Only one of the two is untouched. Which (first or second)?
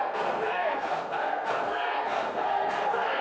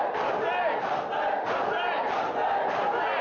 second